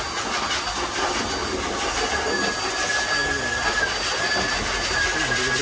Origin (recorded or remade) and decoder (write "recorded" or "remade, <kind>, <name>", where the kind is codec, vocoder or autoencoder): recorded